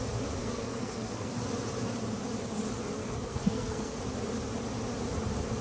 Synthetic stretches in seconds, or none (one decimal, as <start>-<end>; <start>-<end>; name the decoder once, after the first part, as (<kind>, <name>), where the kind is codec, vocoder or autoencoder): 0.4-1.3 (codec, SNAC); 3.0-4.0